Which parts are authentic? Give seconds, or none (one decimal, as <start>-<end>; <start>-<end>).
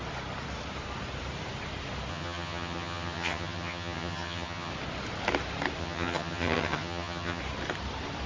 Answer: 0.0-2.1; 4.7-5.8; 7.4-8.3